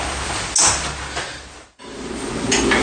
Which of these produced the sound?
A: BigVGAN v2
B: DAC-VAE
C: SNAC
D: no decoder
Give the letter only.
D